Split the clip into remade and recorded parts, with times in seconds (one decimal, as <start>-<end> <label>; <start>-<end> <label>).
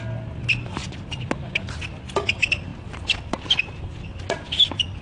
0.0-5.0 recorded